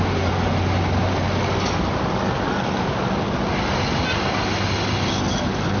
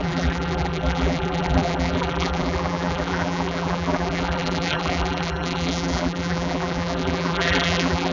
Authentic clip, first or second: first